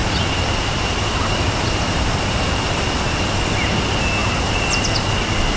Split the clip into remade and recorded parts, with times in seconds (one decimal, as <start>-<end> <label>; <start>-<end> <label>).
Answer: 0.0-2.6 remade; 2.6-4.2 recorded; 4.2-4.8 remade; 4.8-5.6 recorded